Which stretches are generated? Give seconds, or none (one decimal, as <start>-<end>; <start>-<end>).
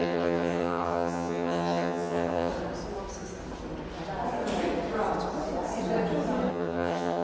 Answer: 0.0-2.5; 6.5-7.2